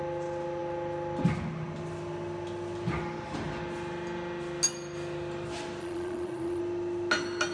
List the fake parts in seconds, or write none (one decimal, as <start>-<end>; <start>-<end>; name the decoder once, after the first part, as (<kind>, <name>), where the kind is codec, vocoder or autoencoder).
5.8-6.6 (vocoder, Vocos)